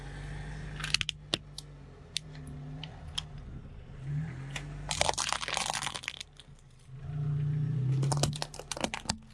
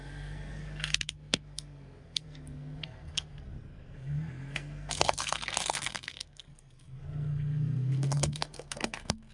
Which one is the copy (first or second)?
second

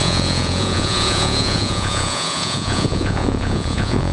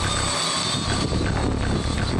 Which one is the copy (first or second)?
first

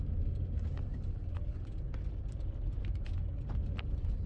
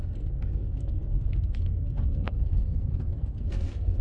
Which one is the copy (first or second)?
second